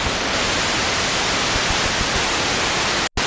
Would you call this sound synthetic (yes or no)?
no